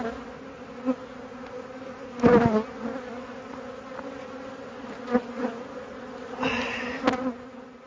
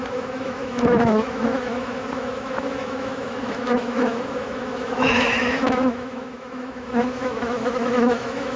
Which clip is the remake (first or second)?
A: second